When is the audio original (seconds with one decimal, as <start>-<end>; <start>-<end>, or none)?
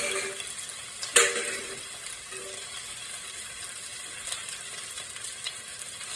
0.0-6.2